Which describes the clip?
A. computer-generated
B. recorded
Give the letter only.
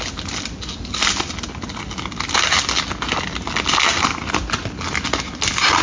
B